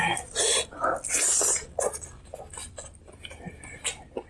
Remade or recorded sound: recorded